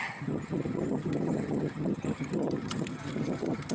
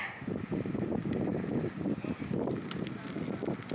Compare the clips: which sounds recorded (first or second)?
second